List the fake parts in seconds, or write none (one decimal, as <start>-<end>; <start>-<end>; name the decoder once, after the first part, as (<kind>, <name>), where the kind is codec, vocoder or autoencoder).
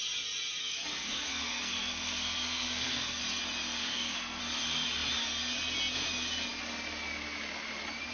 0.6-3.2 (codec, SNAC); 3.8-4.4